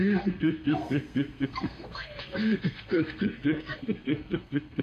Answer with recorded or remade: remade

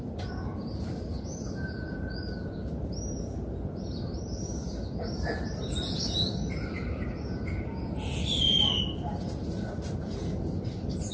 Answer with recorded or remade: recorded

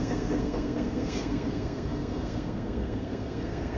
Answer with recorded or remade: remade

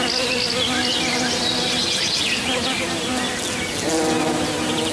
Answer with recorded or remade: recorded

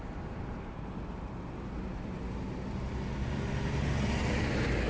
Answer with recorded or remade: recorded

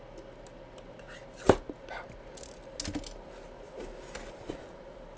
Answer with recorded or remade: recorded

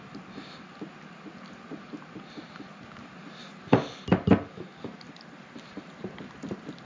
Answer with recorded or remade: recorded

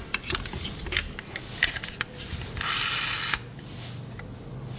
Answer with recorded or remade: recorded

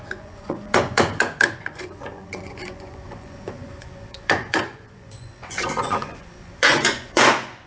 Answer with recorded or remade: remade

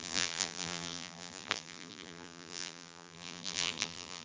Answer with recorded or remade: remade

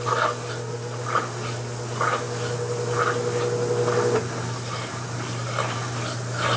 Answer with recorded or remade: recorded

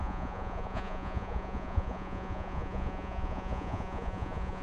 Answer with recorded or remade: remade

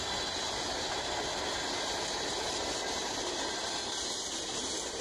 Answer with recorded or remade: recorded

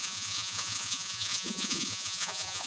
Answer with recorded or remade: remade